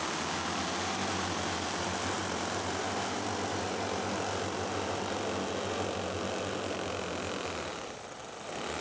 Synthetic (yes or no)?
no